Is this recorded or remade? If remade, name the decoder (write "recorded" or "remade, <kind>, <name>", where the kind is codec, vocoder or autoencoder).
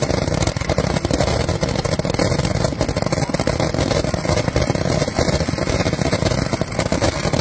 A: recorded